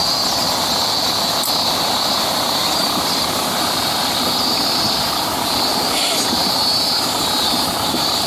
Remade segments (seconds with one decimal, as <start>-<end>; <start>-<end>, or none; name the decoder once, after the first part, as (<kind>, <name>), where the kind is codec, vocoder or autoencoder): 1.0-8.3 (vocoder, BigVGAN v2)